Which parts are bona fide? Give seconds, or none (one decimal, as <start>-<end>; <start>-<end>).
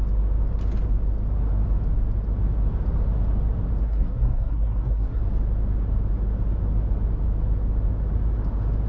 0.0-3.8; 5.2-8.9